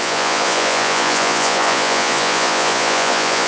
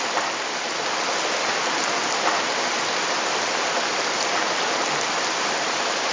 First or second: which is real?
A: second